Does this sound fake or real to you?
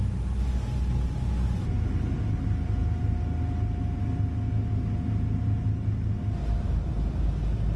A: real